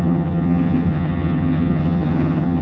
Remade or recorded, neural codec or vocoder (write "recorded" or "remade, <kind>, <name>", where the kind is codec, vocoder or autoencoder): remade, vocoder, HiFi-GAN